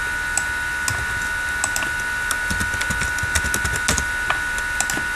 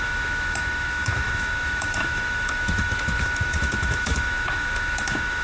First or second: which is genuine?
first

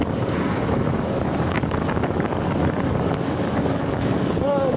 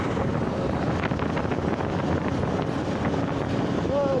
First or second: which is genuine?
second